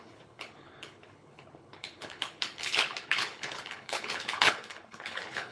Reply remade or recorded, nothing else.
remade